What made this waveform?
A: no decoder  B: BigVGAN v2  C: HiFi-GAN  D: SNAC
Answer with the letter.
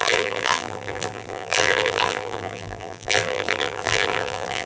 B